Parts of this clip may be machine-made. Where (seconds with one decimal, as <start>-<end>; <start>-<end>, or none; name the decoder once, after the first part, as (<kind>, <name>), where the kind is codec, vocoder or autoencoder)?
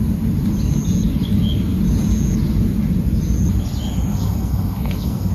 4.1-5.3 (codec, SNAC)